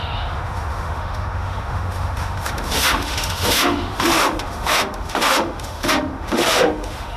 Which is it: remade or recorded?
remade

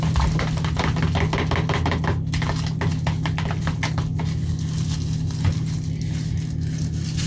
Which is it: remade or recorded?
recorded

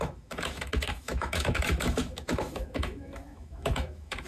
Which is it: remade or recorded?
remade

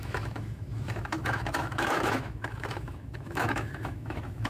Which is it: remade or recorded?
remade